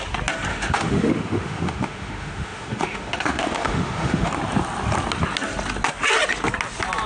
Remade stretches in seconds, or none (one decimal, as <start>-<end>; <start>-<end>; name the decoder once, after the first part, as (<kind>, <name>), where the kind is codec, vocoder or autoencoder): 0.5-4.3 (autoencoder, DAC-VAE)